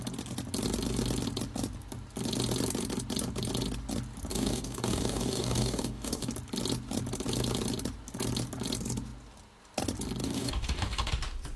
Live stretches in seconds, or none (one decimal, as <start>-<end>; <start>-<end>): 0.0-4.3; 6.3-10.2; 11.1-11.6